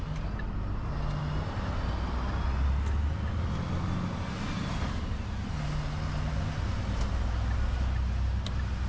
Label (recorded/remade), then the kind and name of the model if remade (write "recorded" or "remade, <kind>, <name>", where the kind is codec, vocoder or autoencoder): recorded